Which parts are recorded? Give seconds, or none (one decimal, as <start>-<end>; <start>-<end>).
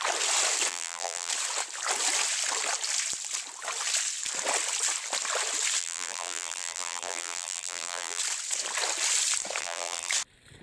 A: 0.0-0.7; 1.3-5.8; 8.2-9.6; 10.1-10.6